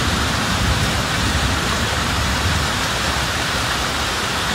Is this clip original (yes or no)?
no